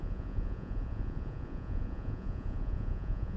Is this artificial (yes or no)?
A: yes